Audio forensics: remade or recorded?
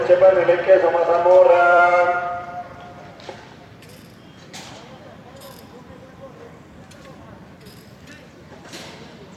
remade